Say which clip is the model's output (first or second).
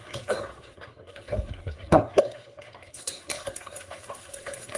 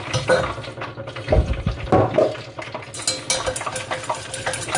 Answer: first